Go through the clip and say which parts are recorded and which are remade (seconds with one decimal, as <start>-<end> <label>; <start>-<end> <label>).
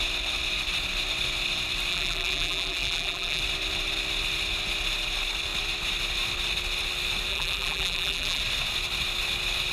0.0-1.9 recorded; 1.9-3.4 remade; 3.4-7.3 recorded; 7.3-8.4 remade; 8.4-9.7 recorded